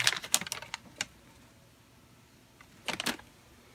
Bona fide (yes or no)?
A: yes